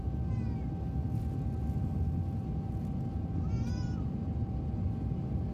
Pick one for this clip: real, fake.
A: real